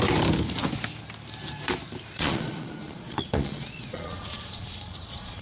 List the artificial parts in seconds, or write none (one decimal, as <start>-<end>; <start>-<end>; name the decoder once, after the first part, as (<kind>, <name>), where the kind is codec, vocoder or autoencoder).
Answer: 2.1-5.4 (vocoder, Vocos)